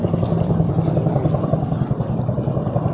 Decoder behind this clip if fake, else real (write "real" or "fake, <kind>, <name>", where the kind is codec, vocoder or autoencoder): fake, vocoder, BigVGAN v2